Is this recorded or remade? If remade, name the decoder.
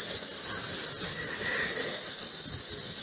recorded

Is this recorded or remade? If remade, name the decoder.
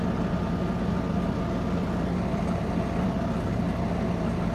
recorded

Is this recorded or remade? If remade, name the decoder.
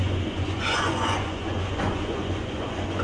remade, vocoder, Vocos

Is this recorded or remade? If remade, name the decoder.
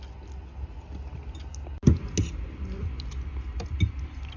recorded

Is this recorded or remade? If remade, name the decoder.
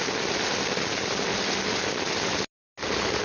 recorded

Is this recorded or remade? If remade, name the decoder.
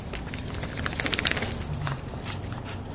recorded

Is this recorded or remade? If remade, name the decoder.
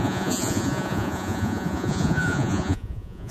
remade, vocoder, Vocos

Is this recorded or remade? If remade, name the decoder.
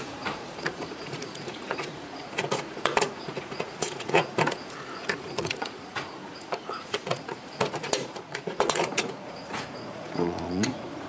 remade, vocoder, Vocos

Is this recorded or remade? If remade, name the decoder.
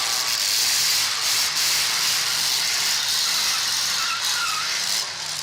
recorded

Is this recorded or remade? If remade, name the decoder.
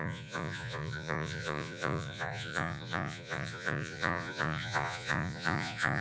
remade, vocoder, Vocos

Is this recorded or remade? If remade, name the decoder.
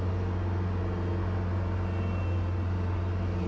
recorded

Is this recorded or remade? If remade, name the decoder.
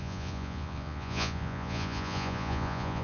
remade, vocoder, Vocos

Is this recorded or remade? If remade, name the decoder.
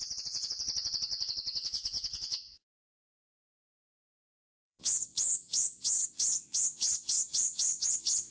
remade, vocoder, Vocos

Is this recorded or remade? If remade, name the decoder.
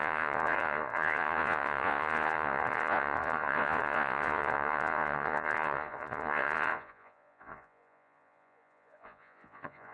remade, vocoder, Vocos